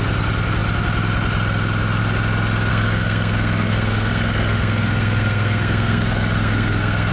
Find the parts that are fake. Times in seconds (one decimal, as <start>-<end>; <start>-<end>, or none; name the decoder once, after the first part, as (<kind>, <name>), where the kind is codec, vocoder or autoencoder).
2.7-7.1 (codec, SNAC)